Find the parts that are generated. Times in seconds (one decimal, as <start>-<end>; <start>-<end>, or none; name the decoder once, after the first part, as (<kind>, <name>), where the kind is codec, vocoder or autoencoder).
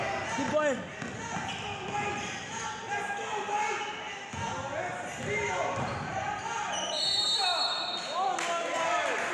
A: 4.9-7.0 (vocoder, BigVGAN v2)